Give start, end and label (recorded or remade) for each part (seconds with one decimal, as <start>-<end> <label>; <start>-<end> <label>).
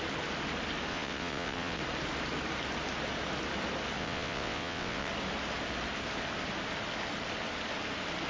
0.0-0.9 recorded; 0.9-1.8 remade; 1.8-4.0 recorded; 4.0-5.1 remade; 5.1-8.3 recorded